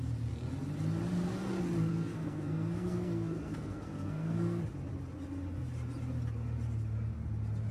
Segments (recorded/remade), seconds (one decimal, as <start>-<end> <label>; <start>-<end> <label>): 0.0-1.9 recorded; 1.9-4.6 remade; 4.6-7.7 recorded